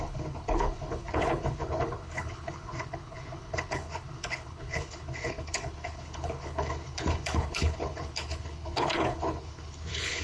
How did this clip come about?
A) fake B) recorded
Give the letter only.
A